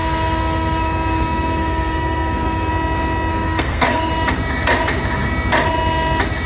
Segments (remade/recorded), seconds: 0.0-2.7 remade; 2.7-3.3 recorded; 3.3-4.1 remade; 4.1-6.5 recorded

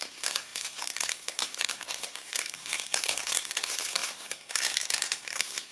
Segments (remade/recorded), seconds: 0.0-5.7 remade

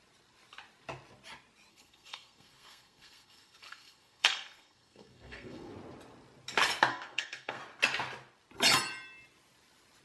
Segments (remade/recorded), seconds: 0.0-1.7 recorded; 1.7-5.7 remade; 5.7-6.9 recorded; 6.9-7.6 remade; 7.6-10.0 recorded

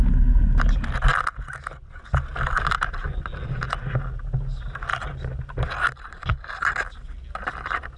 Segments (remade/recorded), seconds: 0.0-8.0 recorded

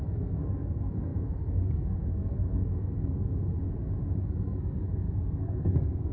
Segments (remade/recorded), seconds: 0.0-3.5 remade; 3.5-4.2 recorded; 4.2-6.1 remade

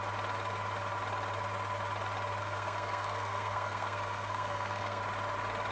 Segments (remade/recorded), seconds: 0.0-2.4 recorded; 2.4-5.0 remade; 5.0-5.7 recorded